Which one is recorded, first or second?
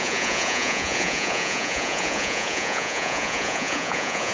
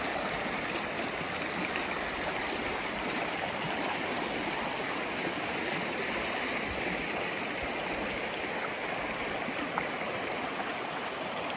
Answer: second